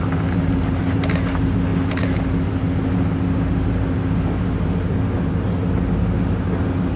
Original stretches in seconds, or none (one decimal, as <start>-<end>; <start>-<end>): 0.0-7.0